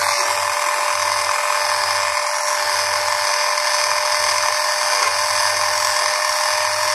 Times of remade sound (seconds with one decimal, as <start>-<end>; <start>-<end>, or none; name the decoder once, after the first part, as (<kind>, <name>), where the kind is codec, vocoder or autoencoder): none